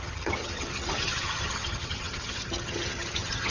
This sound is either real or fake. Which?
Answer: fake